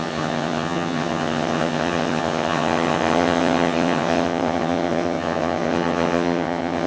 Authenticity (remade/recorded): remade